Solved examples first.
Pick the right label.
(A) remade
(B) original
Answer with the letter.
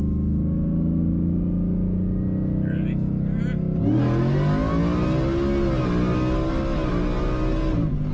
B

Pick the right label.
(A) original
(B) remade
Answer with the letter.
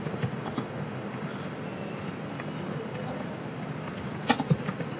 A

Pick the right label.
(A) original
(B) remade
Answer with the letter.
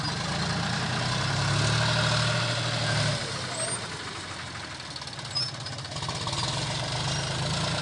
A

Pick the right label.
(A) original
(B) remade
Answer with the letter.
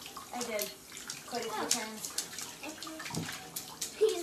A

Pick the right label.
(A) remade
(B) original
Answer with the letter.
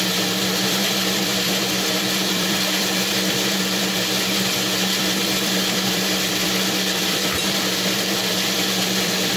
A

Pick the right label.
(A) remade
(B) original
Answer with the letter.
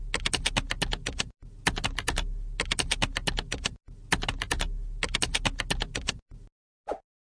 B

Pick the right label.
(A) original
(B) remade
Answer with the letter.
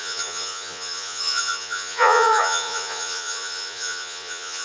B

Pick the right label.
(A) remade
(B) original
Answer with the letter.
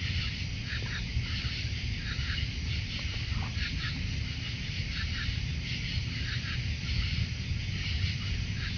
B